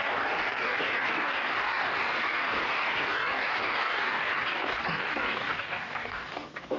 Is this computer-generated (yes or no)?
yes